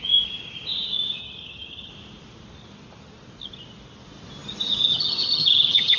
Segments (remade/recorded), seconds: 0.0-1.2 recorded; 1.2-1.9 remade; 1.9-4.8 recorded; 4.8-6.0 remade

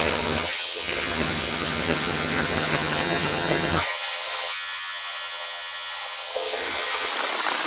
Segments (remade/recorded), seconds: 0.0-7.1 remade; 7.1-7.7 recorded